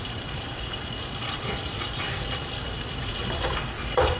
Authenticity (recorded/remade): remade